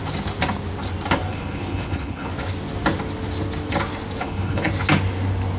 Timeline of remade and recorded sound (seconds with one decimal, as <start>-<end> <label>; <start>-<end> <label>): 0.0-1.3 recorded; 1.3-2.3 remade; 2.3-4.2 recorded; 4.2-4.7 remade; 4.7-5.6 recorded